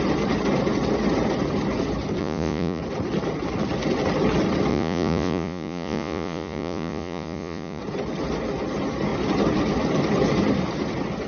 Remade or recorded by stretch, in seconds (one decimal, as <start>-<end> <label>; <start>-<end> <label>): 0.0-2.2 recorded; 2.2-2.8 remade; 2.8-4.7 recorded; 4.7-7.8 remade; 7.8-11.3 recorded